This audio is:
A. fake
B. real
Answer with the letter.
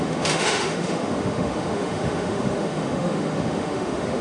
A